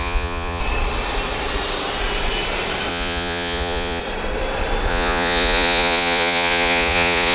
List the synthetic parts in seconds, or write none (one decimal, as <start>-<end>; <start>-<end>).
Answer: 0.0-0.6; 2.9-4.0; 4.9-7.3